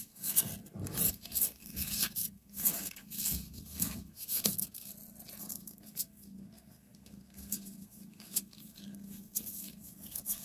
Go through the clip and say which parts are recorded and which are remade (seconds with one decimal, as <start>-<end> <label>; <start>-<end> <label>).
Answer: 0.0-0.5 remade; 0.5-1.1 recorded; 1.1-4.9 remade; 4.9-5.4 recorded; 5.4-10.4 remade